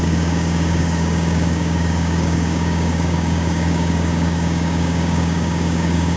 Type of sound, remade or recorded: remade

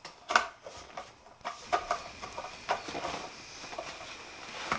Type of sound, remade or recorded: recorded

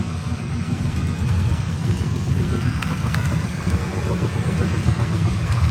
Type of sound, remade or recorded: remade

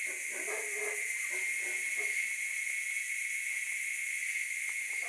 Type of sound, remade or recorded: recorded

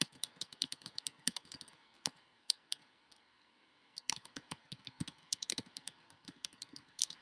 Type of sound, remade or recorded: remade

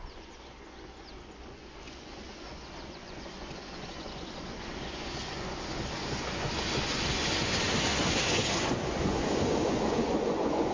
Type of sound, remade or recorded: remade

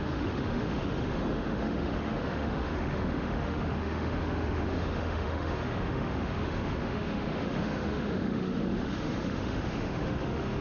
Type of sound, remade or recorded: remade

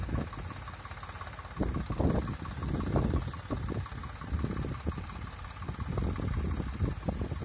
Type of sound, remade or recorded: recorded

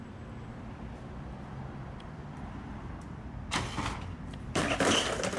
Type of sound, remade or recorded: remade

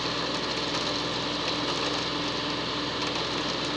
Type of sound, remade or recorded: recorded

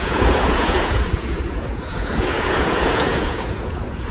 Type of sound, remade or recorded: remade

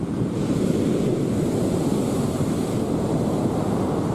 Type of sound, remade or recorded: remade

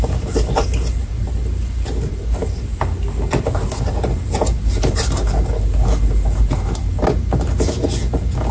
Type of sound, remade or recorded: recorded